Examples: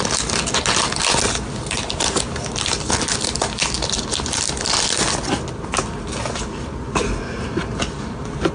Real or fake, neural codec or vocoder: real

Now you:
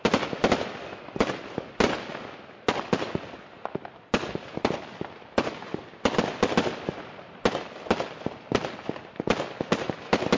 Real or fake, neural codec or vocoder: real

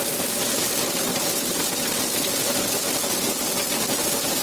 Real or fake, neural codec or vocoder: real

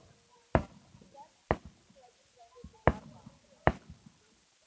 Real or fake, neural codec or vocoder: real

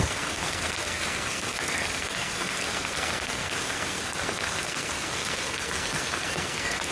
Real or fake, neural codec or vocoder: fake, codec, SNAC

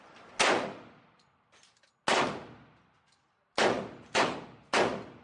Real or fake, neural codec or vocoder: real